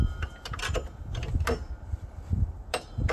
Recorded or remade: recorded